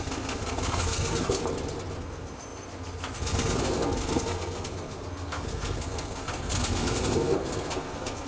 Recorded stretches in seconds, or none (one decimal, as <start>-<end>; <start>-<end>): 1.4-2.0